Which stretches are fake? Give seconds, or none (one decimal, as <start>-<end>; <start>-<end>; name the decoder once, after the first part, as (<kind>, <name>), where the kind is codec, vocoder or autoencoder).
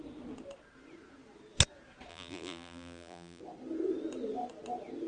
2.1-3.4 (vocoder, BigVGAN v2)